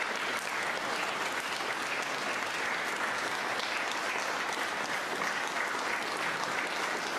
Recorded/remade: recorded